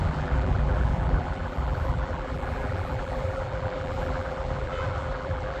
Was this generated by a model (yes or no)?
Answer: yes